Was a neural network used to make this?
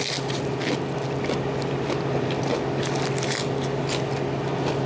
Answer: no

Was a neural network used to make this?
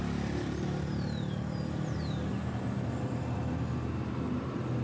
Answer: no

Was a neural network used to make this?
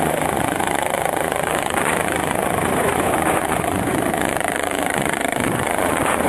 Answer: yes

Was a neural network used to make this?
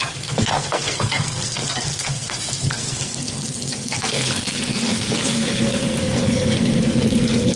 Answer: yes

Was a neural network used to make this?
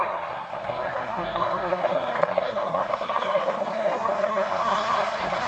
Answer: yes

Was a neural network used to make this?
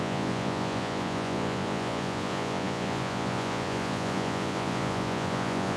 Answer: yes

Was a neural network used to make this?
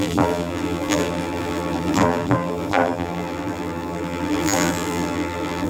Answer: yes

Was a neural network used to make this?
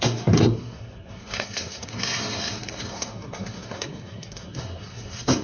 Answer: yes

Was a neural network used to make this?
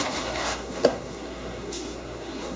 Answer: yes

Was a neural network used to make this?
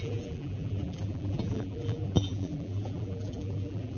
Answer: yes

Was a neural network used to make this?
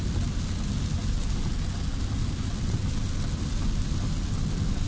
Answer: no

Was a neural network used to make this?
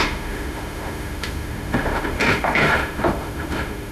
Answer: yes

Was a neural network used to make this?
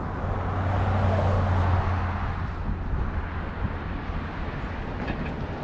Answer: no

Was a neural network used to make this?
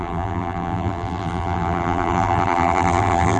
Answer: yes